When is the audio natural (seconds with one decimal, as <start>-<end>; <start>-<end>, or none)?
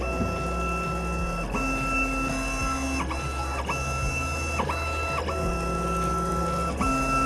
0.0-7.3